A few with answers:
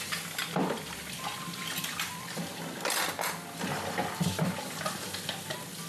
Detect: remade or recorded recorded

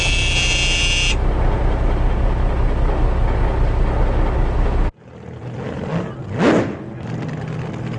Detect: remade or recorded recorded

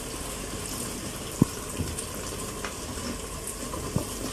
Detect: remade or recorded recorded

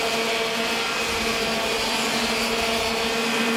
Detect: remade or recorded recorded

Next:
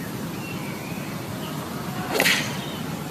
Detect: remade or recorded remade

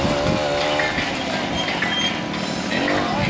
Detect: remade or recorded recorded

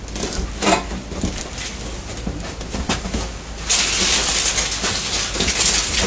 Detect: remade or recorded recorded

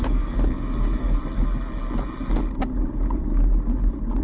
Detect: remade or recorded recorded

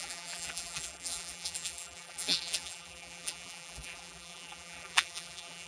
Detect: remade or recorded remade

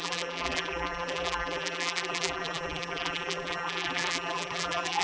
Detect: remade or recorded remade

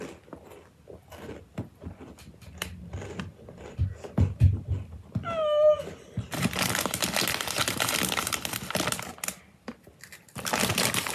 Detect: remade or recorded recorded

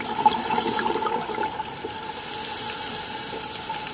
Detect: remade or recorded recorded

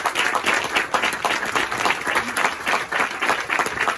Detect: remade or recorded recorded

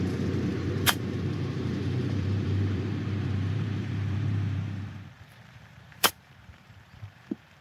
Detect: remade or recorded remade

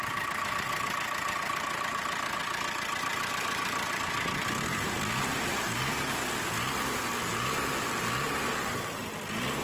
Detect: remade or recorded recorded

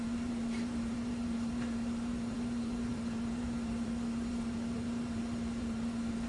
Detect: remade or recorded remade